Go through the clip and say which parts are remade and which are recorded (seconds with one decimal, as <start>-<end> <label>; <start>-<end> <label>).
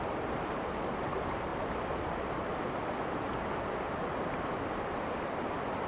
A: 0.0-1.5 remade; 1.5-2.2 recorded; 2.2-3.3 remade; 3.3-5.9 recorded